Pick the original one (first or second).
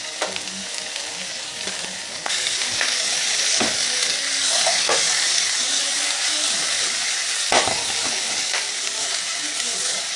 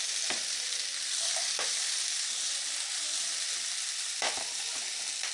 second